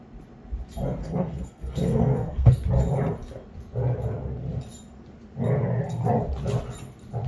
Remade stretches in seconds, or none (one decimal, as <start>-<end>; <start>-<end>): 1.0-2.5